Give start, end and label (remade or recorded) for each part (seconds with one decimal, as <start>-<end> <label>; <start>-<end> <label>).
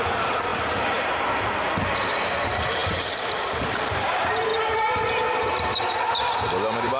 0.0-7.0 recorded